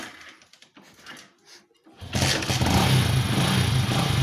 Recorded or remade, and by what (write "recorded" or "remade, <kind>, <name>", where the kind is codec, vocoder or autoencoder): recorded